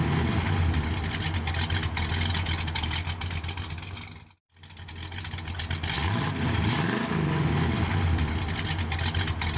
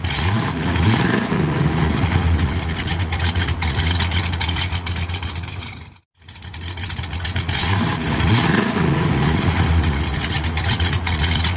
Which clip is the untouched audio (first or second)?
first